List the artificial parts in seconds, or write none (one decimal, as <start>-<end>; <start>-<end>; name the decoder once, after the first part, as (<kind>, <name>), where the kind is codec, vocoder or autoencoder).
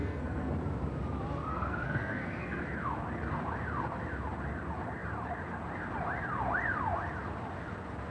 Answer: 0.0-0.5 (codec, SNAC); 1.5-2.6